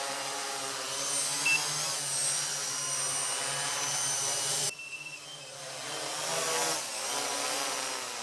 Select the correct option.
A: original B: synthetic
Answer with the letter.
A